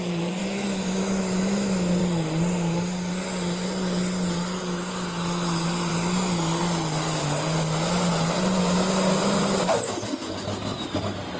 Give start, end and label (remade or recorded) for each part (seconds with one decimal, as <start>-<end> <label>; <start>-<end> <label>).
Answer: 0.0-0.4 recorded; 0.4-2.0 remade; 2.0-11.4 recorded